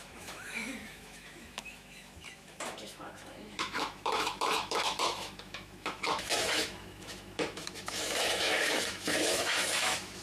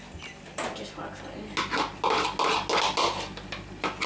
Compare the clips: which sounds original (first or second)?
second